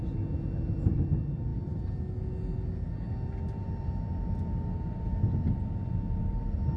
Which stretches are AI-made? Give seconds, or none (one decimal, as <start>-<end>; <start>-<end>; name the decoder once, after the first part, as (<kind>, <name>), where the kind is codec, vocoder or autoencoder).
none